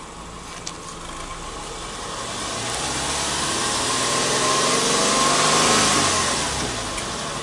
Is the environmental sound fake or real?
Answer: real